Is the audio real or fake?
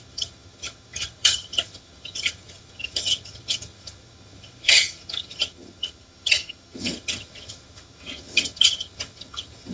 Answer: fake